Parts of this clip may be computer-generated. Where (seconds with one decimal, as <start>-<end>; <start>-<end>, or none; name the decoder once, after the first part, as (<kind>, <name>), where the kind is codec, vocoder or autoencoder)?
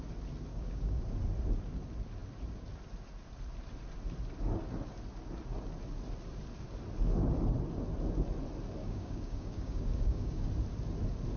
0.5-1.0 (codec, DAC); 8.8-10.5